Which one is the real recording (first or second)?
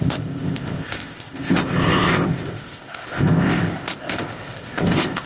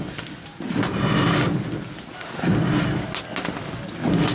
second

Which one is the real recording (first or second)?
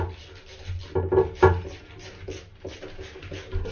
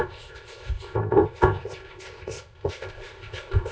first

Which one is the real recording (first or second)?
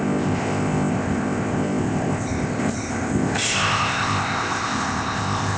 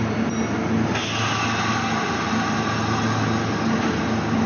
second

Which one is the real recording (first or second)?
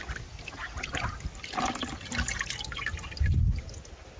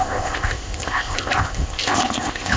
first